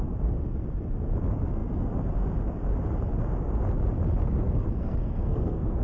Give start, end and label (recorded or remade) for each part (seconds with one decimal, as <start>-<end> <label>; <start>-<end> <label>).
0.0-4.2 recorded; 4.2-5.8 remade